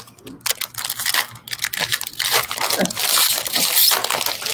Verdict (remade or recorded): recorded